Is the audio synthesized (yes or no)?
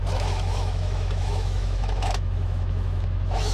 yes